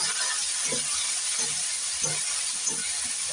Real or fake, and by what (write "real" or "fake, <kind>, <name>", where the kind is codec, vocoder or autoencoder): real